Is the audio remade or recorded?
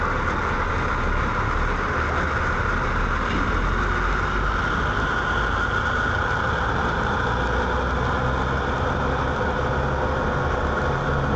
recorded